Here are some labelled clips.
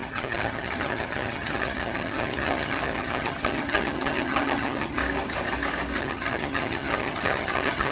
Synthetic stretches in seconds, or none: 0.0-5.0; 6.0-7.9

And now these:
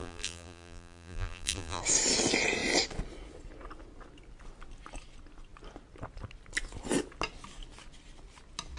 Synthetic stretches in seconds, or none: 0.0-1.8

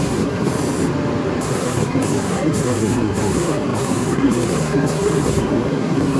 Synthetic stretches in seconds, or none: 0.0-0.5; 1.4-6.2